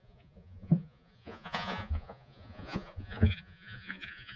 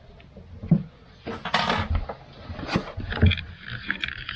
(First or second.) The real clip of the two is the second